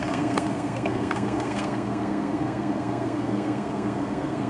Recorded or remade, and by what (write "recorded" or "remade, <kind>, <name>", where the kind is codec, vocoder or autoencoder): remade, codec, SNAC